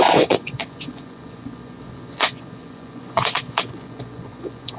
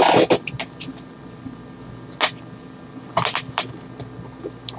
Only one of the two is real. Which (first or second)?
second